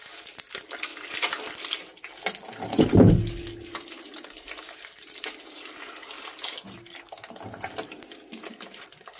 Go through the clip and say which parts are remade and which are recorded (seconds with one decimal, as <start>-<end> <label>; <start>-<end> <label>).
0.0-9.2 recorded

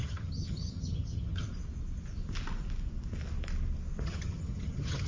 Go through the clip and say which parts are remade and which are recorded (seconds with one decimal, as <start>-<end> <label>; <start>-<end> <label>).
0.0-1.5 remade; 1.5-4.0 recorded; 4.0-5.1 remade